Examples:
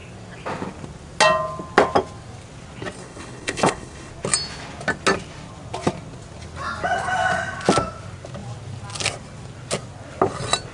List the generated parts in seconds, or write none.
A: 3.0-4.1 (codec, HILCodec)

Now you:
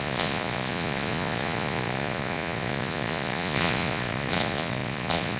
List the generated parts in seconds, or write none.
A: 0.0-5.4 (vocoder, Vocos)

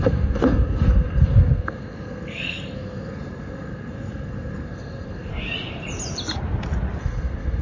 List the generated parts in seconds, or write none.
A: 0.0-5.3 (codec, SNAC); 7.0-7.6

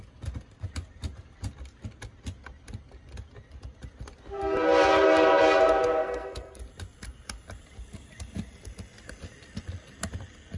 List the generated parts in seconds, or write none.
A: 6.0-6.6 (codec, SNAC)

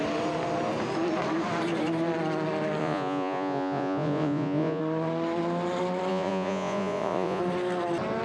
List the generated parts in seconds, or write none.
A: 2.8-4.8 (vocoder, Vocos); 6.1-7.4